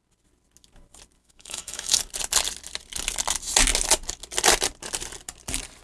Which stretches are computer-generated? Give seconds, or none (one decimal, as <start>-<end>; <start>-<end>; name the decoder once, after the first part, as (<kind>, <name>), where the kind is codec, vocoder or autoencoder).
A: 1.2-2.0 (autoencoder, DAC-VAE)